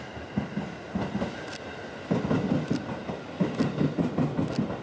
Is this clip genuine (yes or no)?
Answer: yes